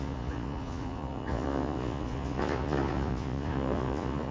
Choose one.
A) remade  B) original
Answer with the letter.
A